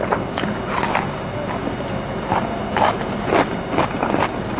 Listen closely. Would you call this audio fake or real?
fake